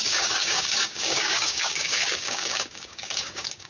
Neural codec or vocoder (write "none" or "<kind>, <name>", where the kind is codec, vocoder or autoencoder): codec, DAC